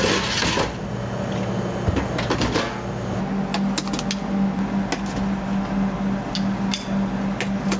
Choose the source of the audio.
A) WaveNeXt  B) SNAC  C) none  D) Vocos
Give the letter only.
C